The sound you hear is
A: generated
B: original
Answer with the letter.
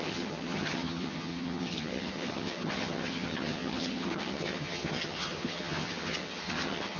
A